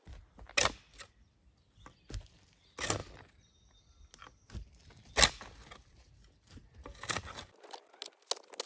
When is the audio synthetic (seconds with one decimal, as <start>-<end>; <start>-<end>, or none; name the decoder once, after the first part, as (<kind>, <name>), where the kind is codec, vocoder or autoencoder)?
none